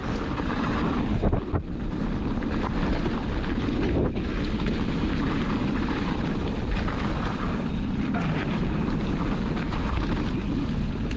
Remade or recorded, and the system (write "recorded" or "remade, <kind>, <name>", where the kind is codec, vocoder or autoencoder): recorded